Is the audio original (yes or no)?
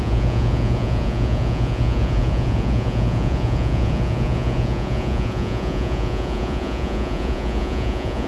no